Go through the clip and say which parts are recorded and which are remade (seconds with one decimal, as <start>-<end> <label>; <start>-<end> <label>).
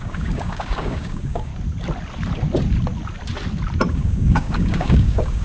0.0-1.5 remade; 1.5-3.9 recorded; 3.9-5.4 remade